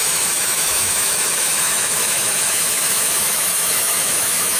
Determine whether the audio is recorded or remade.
remade